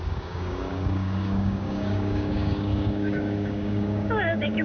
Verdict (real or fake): fake